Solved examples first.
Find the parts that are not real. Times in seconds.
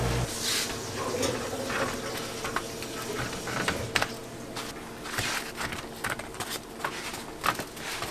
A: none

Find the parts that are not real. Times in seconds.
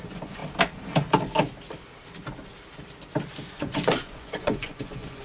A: 0.0-0.4 (vocoder, Vocos); 3.5-5.2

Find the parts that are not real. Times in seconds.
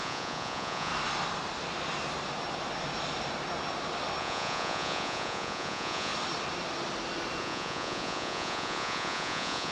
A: 0.0-0.9 (vocoder, Vocos); 4.2-6.1; 7.4-9.7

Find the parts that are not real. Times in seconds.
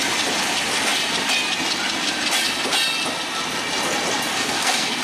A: 4.3-5.0 (codec, SNAC)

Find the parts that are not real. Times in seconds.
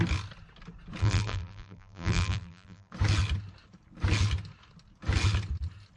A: 1.0-2.9 (vocoder, BigVGAN v2)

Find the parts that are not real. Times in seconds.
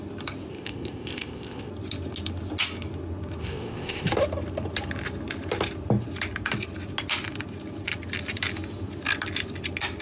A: 0.5-1.7 (codec, ZipCodec); 3.4-4.1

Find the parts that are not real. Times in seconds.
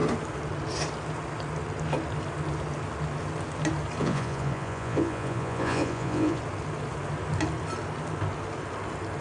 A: 4.0-6.4 (vocoder, Vocos)